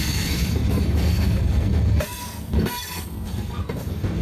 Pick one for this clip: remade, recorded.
remade